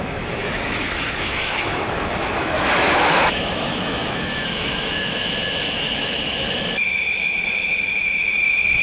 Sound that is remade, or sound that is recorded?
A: remade